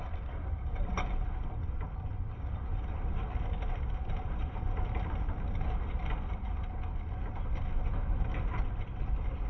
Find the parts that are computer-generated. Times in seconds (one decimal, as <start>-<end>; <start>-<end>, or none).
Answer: none